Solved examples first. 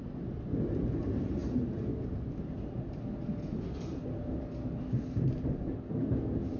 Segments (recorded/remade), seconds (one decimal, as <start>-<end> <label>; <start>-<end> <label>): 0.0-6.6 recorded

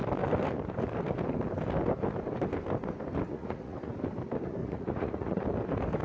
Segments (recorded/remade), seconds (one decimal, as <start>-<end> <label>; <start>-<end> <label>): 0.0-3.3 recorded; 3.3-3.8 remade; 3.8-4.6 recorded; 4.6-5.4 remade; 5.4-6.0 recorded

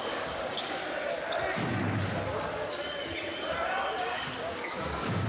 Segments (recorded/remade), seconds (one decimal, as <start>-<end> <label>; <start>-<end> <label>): 0.0-0.8 remade; 0.8-4.0 recorded; 4.0-5.3 remade

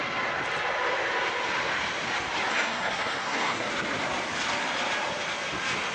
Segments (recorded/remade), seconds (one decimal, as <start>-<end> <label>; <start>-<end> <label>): 0.0-2.5 recorded; 2.5-3.7 remade; 3.7-5.9 recorded

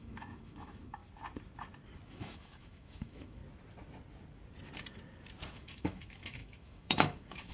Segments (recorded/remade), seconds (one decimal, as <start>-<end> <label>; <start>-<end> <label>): 0.0-1.0 remade; 1.0-2.1 recorded; 2.1-3.4 remade; 3.4-5.5 recorded; 5.5-7.5 remade

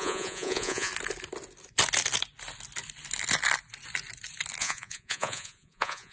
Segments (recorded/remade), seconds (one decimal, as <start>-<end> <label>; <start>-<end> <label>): 0.0-0.9 remade; 0.9-4.6 recorded; 4.6-6.1 remade

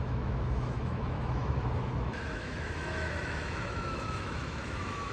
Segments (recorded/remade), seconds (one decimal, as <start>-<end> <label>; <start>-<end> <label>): 0.0-5.1 remade

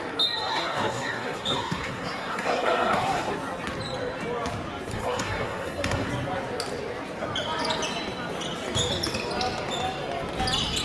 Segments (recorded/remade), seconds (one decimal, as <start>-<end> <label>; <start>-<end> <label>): 0.0-0.5 recorded; 0.5-3.3 remade; 3.3-4.9 recorded; 4.9-6.1 remade; 6.1-10.8 recorded